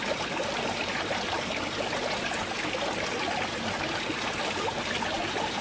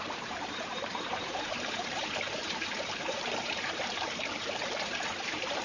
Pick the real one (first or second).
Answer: first